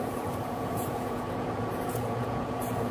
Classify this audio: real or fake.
fake